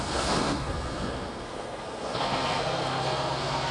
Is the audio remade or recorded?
remade